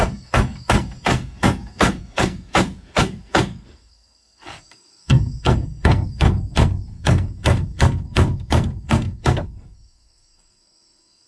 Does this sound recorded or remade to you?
remade